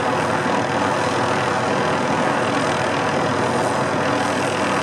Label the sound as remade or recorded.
recorded